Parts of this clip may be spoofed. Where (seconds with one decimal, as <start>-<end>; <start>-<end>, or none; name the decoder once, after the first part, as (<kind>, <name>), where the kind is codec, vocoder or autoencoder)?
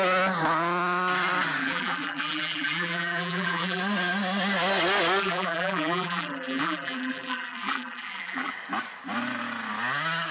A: 1.6-3.8 (vocoder, BigVGAN v2); 5.2-8.5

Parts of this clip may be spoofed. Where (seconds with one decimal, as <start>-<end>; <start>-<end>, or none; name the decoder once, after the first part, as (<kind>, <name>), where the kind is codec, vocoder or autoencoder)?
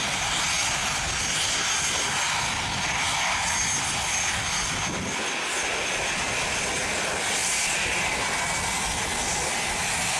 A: 7.4-8.2 (vocoder, BigVGAN v2)